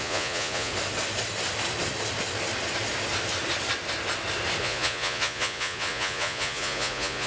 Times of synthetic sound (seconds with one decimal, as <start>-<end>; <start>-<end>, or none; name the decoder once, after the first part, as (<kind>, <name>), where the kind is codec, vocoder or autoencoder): 0.0-0.7 (vocoder, Vocos); 4.6-7.3